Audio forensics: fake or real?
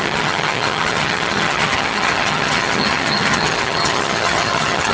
fake